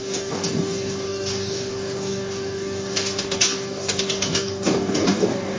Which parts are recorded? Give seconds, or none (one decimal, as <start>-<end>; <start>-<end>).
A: none